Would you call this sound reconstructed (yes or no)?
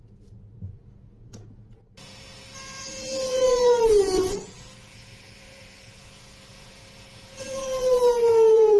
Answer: yes